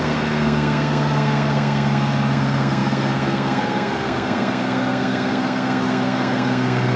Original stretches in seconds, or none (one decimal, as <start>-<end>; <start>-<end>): none